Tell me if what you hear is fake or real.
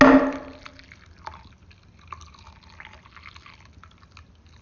real